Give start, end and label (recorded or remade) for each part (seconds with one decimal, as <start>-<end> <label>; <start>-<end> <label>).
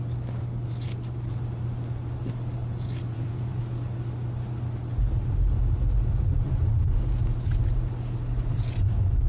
0.0-2.6 recorded; 2.6-3.6 remade; 3.6-9.3 recorded